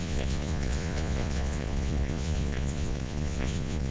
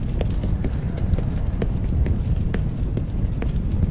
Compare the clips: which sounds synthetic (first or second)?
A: first